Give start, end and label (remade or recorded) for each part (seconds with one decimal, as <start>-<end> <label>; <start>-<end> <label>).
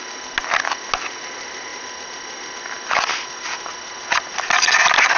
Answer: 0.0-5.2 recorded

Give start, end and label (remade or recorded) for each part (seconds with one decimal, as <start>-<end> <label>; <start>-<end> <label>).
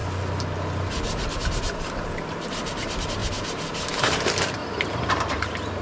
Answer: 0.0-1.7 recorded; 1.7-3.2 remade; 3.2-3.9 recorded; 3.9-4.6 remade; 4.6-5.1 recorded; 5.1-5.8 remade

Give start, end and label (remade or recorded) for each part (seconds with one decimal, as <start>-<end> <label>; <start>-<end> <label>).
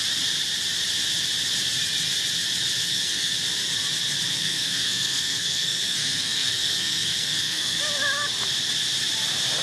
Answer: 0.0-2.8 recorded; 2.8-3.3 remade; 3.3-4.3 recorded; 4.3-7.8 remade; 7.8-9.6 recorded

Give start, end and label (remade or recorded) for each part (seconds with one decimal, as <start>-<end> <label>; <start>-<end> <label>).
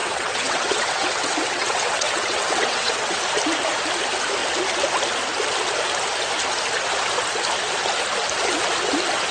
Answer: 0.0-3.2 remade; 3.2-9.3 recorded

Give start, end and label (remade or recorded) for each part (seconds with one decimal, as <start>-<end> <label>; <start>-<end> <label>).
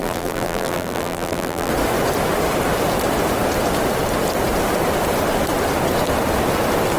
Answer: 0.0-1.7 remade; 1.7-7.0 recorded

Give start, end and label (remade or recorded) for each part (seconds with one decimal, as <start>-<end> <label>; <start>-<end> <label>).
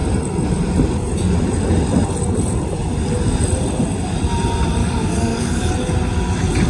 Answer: 0.0-4.8 recorded; 4.8-5.7 remade; 5.7-6.7 recorded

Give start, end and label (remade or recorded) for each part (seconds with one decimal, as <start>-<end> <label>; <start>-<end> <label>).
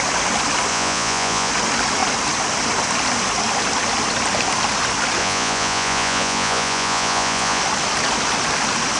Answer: 0.0-0.7 recorded; 0.7-1.5 remade; 1.5-5.2 recorded; 5.2-7.6 remade; 7.6-9.0 recorded